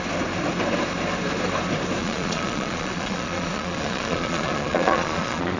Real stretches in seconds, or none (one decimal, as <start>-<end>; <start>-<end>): 0.0-2.0

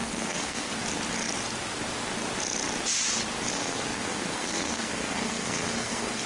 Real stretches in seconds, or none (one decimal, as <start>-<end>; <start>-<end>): 0.7-3.5